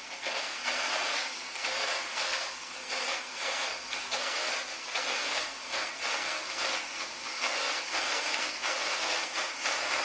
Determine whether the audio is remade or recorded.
remade